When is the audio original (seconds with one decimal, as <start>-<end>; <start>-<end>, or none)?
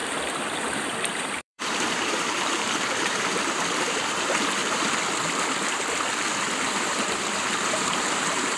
4.6-6.6